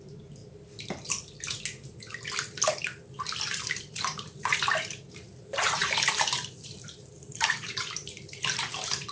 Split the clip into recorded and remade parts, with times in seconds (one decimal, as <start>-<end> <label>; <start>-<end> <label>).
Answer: 0.0-0.4 remade; 0.4-3.9 recorded; 3.9-9.1 remade